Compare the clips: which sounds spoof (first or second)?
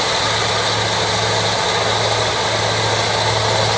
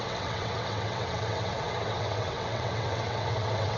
second